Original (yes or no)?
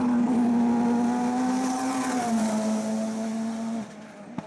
yes